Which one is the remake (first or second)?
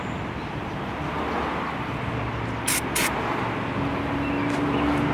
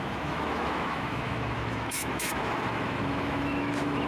second